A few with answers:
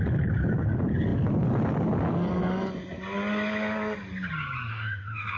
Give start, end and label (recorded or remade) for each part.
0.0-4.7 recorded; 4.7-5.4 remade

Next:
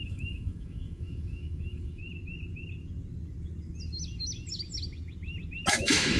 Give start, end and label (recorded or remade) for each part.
0.0-2.0 remade; 2.0-5.7 recorded; 5.7-6.2 remade

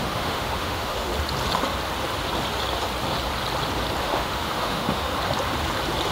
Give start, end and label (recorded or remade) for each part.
0.0-1.1 remade; 1.1-4.0 recorded; 4.0-5.1 remade; 5.1-6.1 recorded

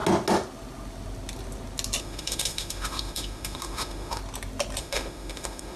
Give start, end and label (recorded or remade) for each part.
0.0-2.0 recorded; 2.0-4.2 remade; 4.2-4.8 recorded; 4.8-5.8 remade

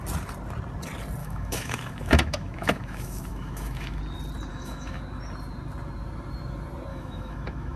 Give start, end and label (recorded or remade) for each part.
0.0-1.2 recorded; 1.2-4.0 remade; 4.0-4.5 recorded; 4.5-5.0 remade; 5.0-6.9 recorded; 6.9-7.8 remade

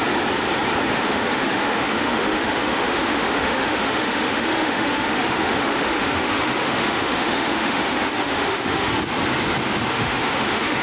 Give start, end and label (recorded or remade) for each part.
0.0-0.9 recorded; 0.9-8.9 remade; 8.9-9.9 recorded; 9.9-10.8 remade

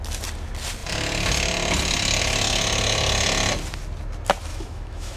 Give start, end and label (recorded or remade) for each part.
0.0-4.5 recorded; 4.5-5.2 remade

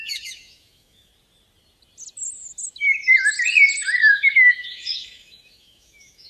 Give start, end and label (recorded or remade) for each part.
0.0-1.1 remade; 1.1-4.0 recorded; 4.0-6.3 remade